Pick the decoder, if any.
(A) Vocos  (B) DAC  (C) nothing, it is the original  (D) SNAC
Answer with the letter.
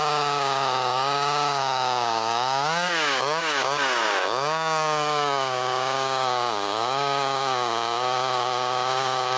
B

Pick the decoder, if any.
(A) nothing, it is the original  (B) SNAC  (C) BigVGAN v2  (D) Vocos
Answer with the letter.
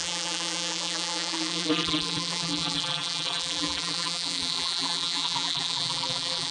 C